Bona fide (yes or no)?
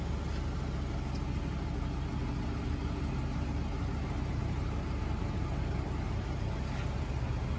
yes